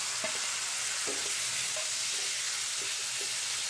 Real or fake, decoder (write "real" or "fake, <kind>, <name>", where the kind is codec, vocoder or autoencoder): real